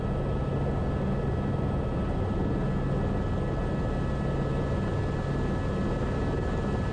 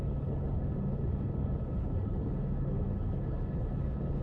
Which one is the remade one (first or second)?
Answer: second